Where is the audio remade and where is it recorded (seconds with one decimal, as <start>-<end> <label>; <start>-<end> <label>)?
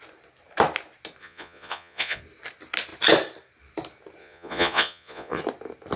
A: 0.0-1.2 recorded; 1.2-2.2 remade; 2.2-4.2 recorded; 4.2-5.4 remade; 5.4-6.0 recorded